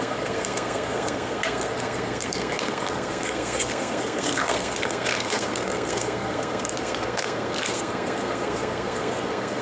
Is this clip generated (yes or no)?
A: yes